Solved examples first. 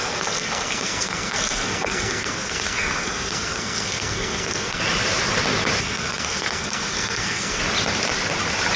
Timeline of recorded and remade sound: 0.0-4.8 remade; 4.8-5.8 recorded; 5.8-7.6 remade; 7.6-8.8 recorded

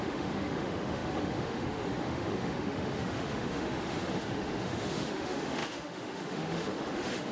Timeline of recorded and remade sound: 0.0-7.3 remade

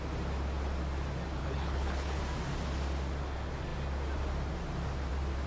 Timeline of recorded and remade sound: 0.0-1.4 recorded; 1.4-2.2 remade; 2.2-5.5 recorded

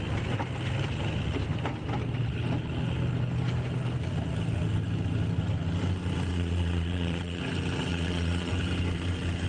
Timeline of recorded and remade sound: 0.0-6.3 recorded; 6.3-7.4 remade; 7.4-7.9 recorded; 7.9-8.5 remade; 8.5-9.5 recorded

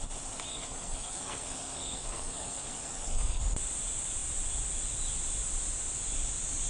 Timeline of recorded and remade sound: 0.0-0.5 recorded; 0.5-3.4 remade; 3.4-6.7 recorded

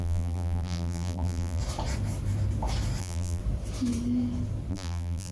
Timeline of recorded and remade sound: 0.0-1.6 remade; 1.6-3.0 recorded; 3.0-3.4 remade; 3.4-4.7 recorded; 4.7-5.3 remade

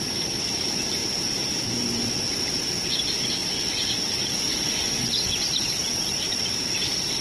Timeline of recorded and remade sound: 0.0-7.2 remade